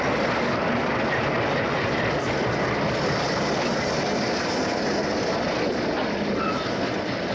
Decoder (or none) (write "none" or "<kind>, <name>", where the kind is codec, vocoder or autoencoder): none